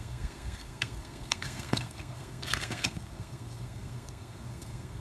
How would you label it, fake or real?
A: fake